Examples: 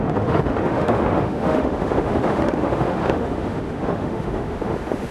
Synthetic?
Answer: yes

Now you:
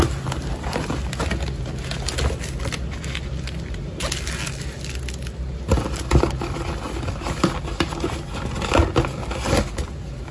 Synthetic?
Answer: no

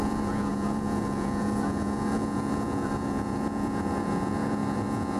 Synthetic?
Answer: yes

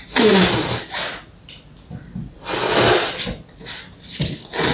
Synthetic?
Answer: no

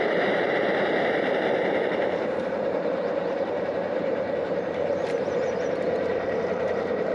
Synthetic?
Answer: yes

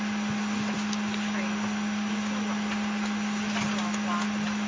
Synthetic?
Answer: no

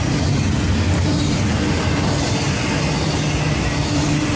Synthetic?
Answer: no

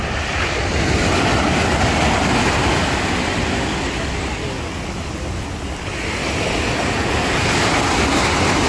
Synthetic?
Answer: no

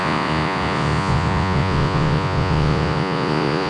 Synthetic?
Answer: yes